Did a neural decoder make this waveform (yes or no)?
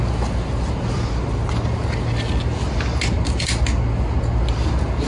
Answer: no